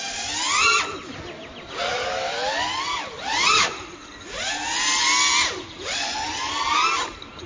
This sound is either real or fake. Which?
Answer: real